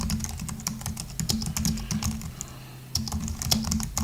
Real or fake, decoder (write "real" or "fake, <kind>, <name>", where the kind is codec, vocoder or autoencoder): real